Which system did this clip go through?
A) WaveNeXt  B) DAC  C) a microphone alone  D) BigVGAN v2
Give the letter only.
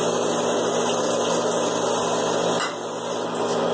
C